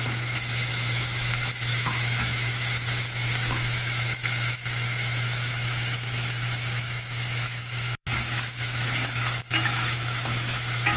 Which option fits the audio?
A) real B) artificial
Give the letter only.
B